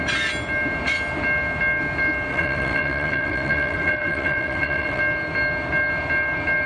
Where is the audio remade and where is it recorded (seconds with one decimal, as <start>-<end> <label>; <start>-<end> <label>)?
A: 0.0-2.3 recorded; 2.3-5.0 remade; 5.0-6.7 recorded